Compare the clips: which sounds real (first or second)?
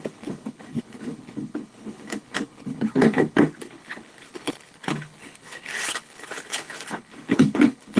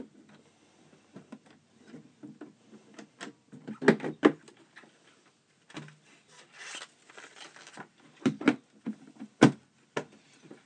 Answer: second